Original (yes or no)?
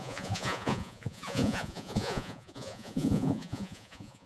no